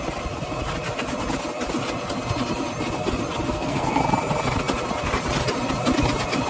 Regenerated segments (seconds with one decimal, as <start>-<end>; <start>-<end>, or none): 3.5-4.0